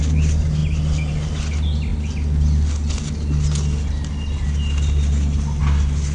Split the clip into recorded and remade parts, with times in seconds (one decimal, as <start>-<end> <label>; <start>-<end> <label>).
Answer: 0.0-6.1 recorded